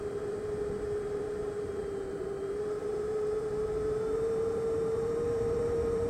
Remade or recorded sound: remade